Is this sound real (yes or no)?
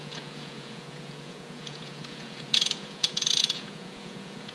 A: no